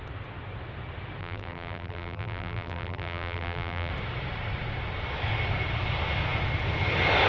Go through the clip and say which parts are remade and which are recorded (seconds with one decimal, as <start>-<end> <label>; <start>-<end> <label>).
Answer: 0.0-1.2 recorded; 1.2-3.9 remade; 3.9-7.3 recorded